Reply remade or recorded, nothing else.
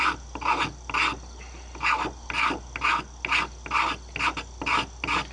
recorded